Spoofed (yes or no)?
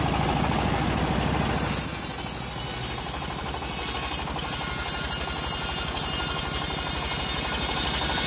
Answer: no